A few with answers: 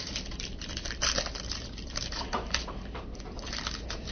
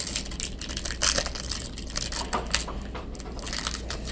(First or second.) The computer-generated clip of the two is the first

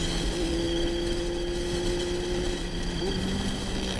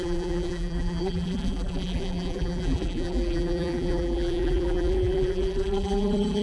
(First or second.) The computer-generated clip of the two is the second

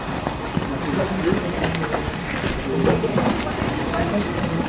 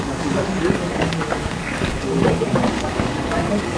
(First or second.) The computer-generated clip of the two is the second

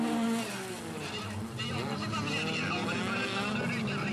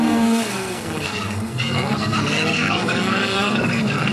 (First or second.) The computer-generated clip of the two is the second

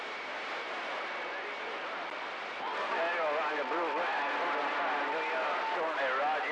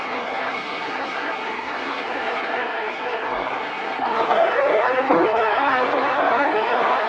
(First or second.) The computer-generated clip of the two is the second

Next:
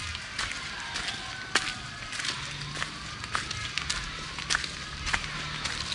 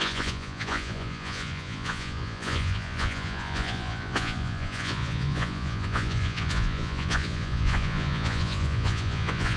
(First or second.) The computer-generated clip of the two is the second